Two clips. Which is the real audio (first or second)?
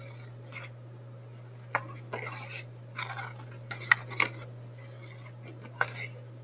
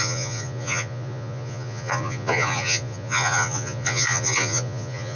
first